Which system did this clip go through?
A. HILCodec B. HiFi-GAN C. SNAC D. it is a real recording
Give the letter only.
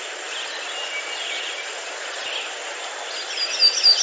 D